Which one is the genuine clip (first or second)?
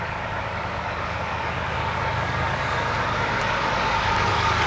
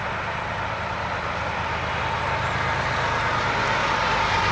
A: second